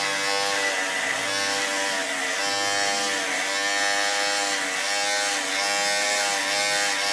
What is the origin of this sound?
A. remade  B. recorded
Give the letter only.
B